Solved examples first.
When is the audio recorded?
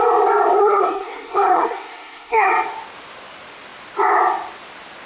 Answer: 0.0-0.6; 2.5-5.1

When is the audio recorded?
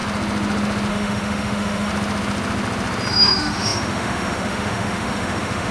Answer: 0.0-0.9; 1.9-3.1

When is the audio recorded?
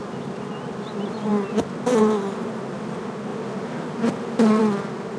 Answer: 0.0-5.2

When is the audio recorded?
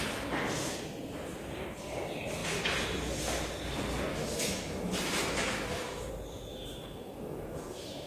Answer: 0.0-4.1; 6.1-6.5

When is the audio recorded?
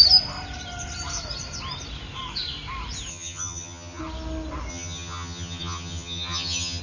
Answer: 0.0-3.1; 4.0-4.7